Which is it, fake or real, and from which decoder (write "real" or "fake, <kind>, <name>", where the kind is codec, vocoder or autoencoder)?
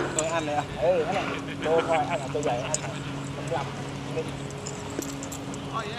real